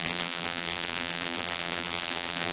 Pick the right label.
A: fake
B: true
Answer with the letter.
A